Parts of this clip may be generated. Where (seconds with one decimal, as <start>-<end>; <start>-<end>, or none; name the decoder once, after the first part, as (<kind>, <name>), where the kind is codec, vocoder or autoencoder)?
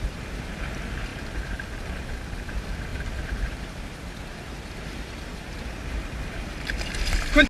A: 0.0-7.5 (vocoder, BigVGAN v2)